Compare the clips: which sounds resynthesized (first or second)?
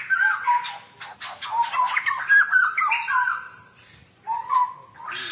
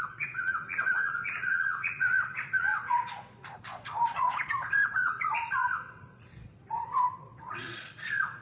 second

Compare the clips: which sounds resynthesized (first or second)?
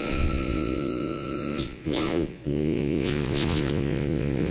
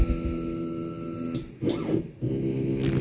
first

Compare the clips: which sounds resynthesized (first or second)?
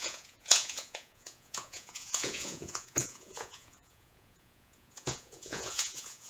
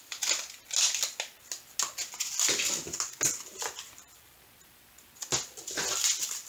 first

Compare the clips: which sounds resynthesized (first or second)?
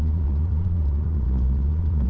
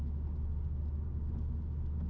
first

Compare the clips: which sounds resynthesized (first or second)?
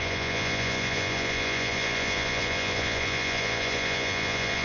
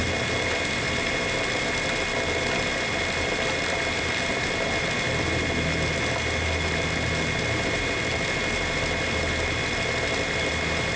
first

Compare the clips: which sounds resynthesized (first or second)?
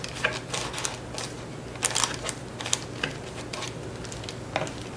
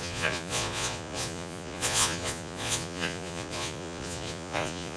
second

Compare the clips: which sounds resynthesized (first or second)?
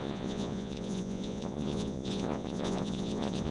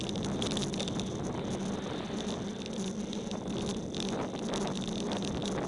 first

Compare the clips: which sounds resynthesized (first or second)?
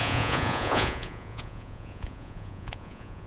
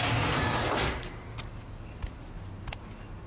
first